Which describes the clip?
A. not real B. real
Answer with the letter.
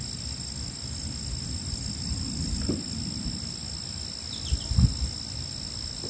B